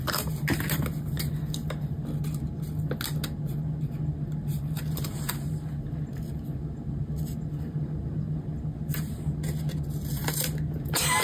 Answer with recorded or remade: recorded